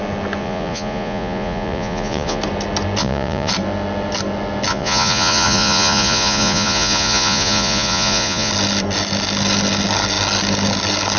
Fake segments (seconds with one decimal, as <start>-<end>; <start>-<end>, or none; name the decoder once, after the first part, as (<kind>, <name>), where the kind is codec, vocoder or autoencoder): 0.4-2.4 (vocoder, Vocos); 3.0-3.5; 4.7-8.5